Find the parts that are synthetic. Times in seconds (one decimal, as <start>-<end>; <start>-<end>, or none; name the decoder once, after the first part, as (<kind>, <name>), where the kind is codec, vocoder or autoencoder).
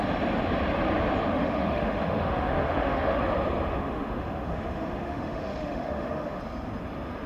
1.3-3.2 (autoencoder, DAC-VAE); 3.7-6.4